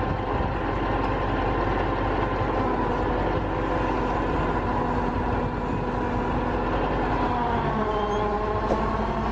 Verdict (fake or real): real